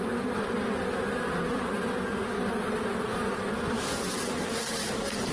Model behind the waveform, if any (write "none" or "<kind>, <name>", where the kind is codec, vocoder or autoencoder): none